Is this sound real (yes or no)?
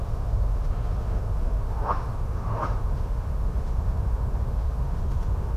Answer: no